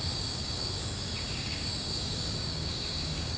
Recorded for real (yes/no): no